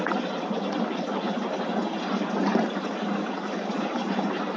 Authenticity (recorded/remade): recorded